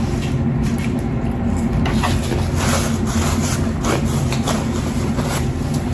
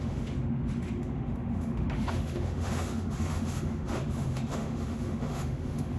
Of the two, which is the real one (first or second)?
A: first